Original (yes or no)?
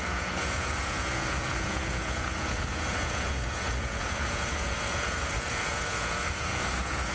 no